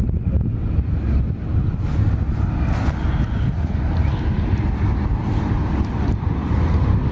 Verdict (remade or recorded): recorded